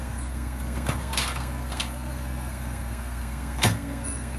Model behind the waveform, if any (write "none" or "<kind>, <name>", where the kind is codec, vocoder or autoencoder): codec, SNAC